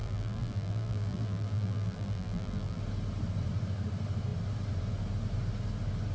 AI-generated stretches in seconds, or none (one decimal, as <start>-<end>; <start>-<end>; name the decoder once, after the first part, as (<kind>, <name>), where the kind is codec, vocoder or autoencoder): 0.0-2.8 (vocoder, BigVGAN v2)